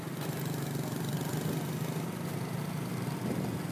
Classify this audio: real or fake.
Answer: real